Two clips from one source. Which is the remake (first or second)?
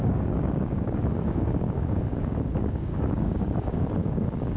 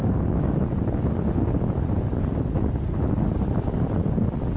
first